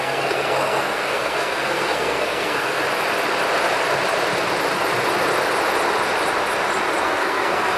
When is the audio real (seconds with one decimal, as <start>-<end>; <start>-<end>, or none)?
2.8-7.0